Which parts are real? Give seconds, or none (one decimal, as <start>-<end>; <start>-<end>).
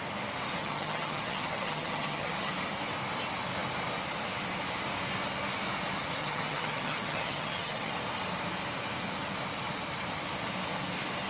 0.0-0.6; 2.5-6.2; 7.9-11.3